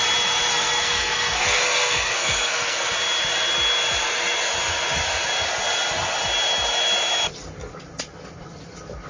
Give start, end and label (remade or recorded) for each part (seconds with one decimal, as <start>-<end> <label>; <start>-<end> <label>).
0.0-0.5 recorded; 0.5-2.9 remade; 2.9-9.1 recorded